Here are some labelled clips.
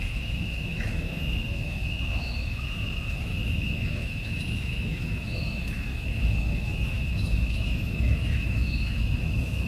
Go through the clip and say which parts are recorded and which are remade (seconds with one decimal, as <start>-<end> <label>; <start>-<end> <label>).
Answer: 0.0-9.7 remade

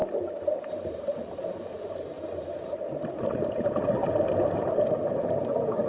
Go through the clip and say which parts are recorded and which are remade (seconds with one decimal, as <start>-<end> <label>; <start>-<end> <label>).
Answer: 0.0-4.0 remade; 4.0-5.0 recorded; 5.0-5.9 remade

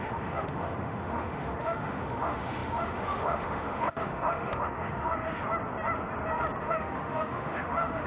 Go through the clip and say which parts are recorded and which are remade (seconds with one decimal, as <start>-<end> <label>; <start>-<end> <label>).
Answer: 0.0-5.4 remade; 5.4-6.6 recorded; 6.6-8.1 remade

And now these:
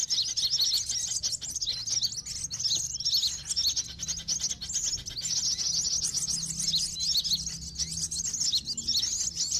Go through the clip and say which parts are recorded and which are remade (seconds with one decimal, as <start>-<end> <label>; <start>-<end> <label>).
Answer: 0.0-9.6 recorded

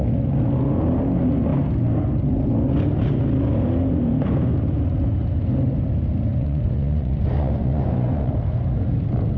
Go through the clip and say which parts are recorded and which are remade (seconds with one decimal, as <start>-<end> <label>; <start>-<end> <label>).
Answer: 0.0-6.3 recorded; 6.3-8.3 remade; 8.3-9.4 recorded

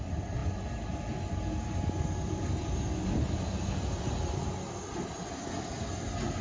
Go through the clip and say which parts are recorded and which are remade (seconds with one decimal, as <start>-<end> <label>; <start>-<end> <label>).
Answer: 0.0-6.4 recorded